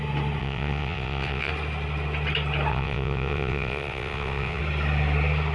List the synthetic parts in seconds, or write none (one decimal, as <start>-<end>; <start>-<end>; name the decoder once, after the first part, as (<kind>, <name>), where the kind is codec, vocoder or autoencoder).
0.4-1.5 (vocoder, WaveNeXt); 2.7-4.6